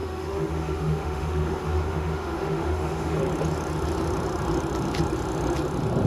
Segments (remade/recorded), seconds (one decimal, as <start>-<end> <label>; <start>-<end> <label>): 0.0-3.2 remade; 3.2-6.1 recorded